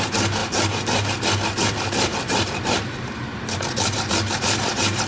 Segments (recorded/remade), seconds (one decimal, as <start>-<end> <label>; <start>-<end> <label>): 0.0-5.1 recorded